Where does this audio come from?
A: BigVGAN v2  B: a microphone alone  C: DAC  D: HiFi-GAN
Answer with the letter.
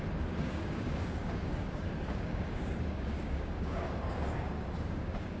C